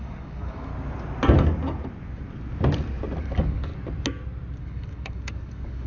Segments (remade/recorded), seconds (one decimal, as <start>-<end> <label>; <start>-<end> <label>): 0.0-0.7 remade; 0.7-3.2 recorded; 3.2-3.7 remade; 3.7-4.6 recorded; 4.6-5.9 remade